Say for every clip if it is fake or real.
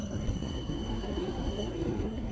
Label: fake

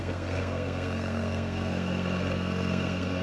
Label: fake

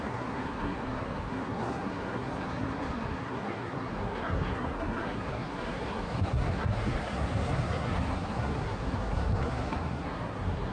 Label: fake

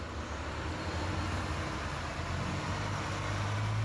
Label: real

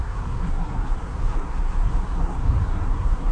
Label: fake